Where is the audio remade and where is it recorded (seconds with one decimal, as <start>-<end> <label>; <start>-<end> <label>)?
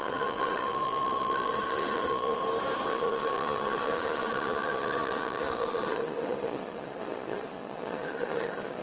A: 0.0-2.4 remade; 2.4-2.9 recorded; 2.9-8.8 remade